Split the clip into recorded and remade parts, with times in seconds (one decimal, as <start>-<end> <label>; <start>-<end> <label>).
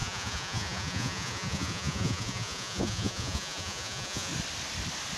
0.0-4.3 remade; 4.3-5.2 recorded